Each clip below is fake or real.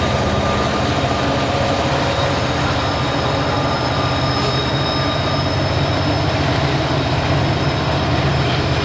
real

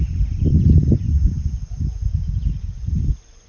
fake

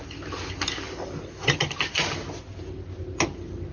real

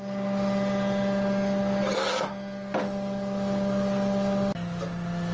real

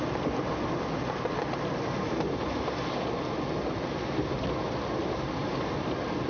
real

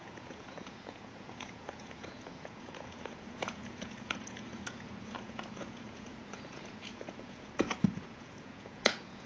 fake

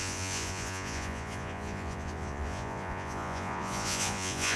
fake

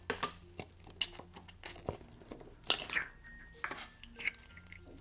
real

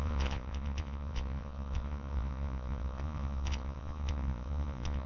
fake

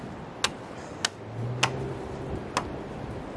real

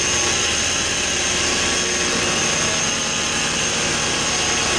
real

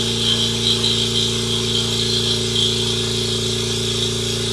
real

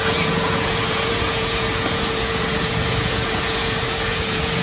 fake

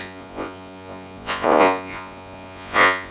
fake